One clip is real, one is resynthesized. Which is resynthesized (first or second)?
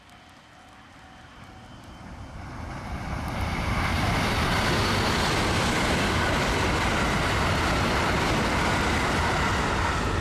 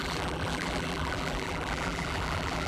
second